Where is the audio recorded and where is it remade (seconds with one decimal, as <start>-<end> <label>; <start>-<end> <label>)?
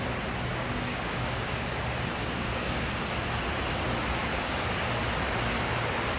0.0-0.5 recorded; 0.5-1.7 remade; 1.7-2.2 recorded; 2.2-3.0 remade; 3.0-4.2 recorded; 4.2-5.0 remade; 5.0-6.2 recorded